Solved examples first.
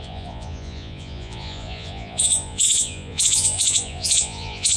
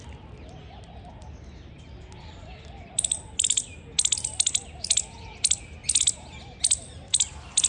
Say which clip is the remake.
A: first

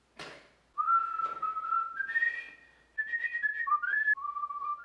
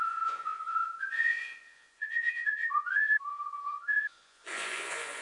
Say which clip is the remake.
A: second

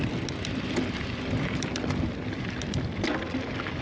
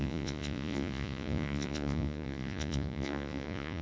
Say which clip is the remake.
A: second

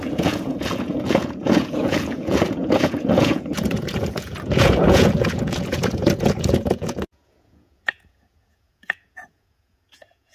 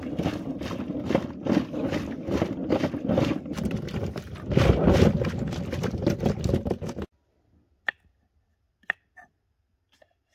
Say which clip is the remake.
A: first